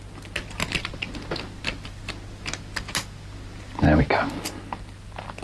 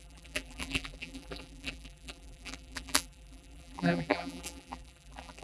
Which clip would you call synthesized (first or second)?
second